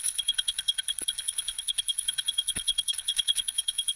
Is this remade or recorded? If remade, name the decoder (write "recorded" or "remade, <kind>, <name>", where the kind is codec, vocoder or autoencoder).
remade, codec, HILCodec